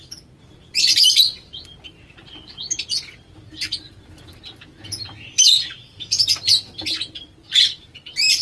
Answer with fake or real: fake